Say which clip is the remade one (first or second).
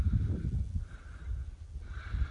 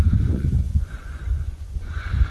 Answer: second